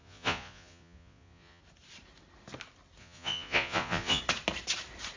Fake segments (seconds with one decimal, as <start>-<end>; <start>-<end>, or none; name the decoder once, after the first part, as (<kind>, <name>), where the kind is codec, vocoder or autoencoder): 0.0-1.6 (vocoder, Vocos); 3.0-4.2

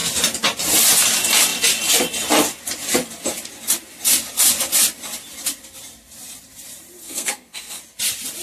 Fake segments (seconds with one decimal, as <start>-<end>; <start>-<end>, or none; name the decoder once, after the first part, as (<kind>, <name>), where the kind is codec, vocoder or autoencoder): 7.0-7.8 (codec, SNAC)

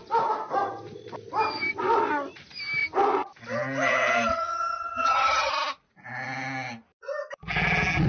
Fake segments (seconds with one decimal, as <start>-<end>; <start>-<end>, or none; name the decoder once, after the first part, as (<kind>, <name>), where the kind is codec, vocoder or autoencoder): 4.3-5.5 (vocoder, HiFi-GAN)

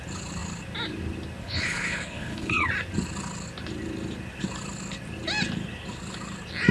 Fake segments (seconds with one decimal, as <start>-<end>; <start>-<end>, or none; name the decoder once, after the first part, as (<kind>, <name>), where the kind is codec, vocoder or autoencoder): 1.4-2.7 (codec, HILCodec)

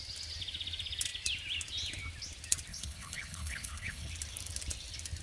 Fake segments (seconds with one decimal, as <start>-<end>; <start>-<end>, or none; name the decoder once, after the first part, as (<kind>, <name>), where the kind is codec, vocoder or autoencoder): 2.7-4.1 (codec, HILCodec)